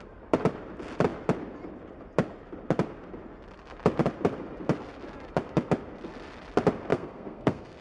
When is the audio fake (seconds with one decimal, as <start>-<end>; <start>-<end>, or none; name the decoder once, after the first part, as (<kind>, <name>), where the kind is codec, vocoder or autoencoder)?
6.9-7.8 (codec, SNAC)